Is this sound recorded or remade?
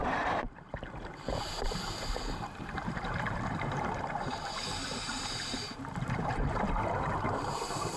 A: remade